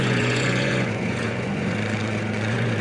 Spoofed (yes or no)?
yes